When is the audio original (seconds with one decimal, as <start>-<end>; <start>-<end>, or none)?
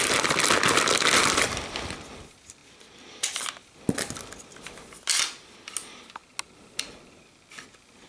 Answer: 0.0-8.1